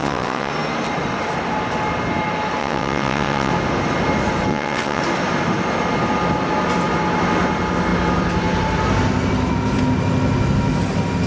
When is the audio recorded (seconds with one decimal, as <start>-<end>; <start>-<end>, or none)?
0.5-2.6; 3.5-4.5; 5.0-11.3